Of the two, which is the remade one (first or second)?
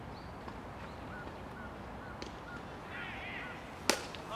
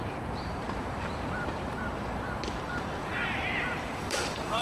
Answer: second